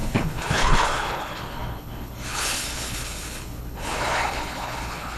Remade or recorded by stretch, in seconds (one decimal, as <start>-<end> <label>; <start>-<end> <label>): 0.0-5.2 remade